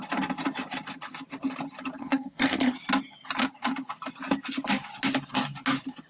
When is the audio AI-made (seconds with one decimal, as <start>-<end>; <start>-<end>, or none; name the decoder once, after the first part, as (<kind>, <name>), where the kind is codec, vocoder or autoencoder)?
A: 2.0-2.7 (codec, SNAC)